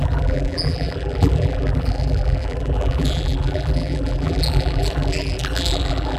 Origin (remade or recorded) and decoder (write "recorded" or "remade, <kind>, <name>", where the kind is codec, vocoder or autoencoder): remade, vocoder, BigVGAN v2